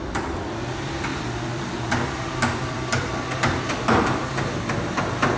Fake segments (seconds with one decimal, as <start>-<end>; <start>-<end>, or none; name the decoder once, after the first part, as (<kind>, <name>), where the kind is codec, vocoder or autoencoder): 1.1-4.3 (vocoder, BigVGAN v2)